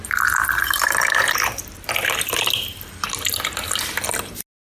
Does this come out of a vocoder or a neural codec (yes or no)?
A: no